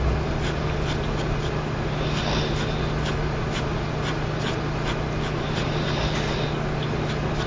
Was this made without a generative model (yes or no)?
yes